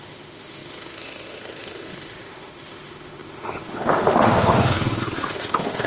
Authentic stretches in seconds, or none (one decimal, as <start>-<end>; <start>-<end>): none